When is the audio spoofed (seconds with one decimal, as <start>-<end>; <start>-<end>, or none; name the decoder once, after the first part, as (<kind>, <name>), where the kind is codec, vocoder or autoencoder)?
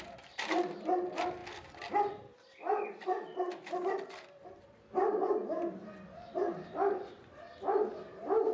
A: none